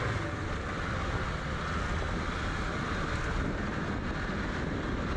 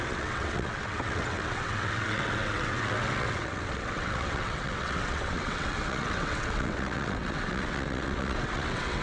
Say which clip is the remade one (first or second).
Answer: second